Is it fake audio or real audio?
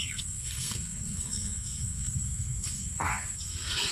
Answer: fake